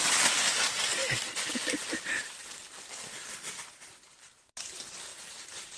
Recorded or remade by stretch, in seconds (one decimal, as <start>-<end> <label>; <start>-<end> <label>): 0.0-1.0 recorded; 1.0-2.5 remade; 2.5-5.1 recorded; 5.1-5.8 remade